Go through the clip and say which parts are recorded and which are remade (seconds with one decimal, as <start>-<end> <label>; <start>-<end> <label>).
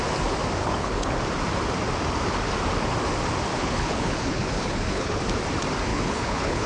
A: 0.0-0.6 recorded; 0.6-1.1 remade; 1.1-3.5 recorded; 3.5-5.2 remade; 5.2-5.9 recorded; 5.9-6.7 remade